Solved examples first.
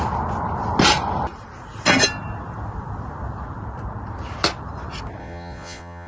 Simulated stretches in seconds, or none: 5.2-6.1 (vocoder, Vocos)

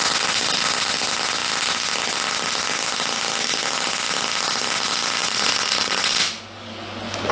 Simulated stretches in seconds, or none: 5.2-6.1 (vocoder, WaveNeXt)